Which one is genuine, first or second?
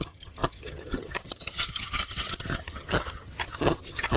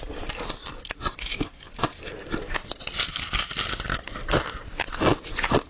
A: second